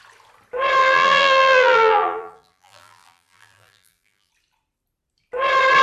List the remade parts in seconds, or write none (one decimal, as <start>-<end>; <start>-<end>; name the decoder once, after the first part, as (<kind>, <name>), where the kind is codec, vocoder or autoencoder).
0.8-4.3 (vocoder, BigVGAN v2)